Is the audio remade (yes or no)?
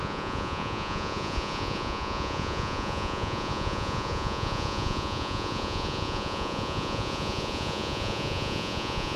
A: yes